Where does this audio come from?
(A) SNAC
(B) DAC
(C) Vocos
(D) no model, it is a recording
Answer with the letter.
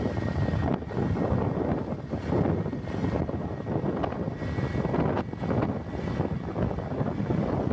D